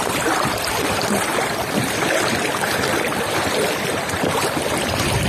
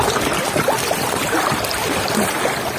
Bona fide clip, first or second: second